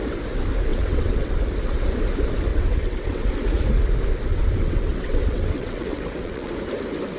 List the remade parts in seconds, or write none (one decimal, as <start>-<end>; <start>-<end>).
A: 0.7-1.3; 2.5-3.3; 4.3-6.5